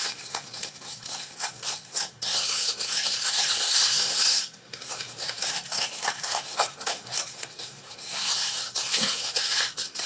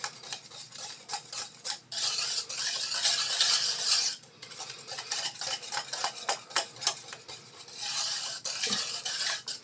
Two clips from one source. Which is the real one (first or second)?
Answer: second